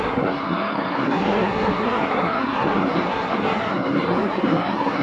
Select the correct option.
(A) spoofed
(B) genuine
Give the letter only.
A